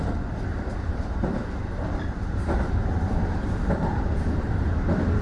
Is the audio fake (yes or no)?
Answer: yes